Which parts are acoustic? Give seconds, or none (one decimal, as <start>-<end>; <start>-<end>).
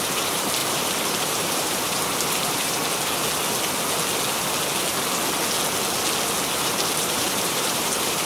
2.8-6.5